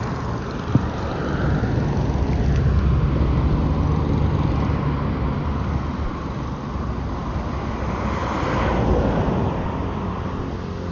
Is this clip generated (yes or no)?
no